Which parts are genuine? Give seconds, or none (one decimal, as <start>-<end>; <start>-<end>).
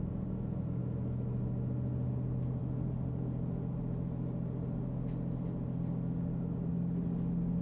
0.0-7.6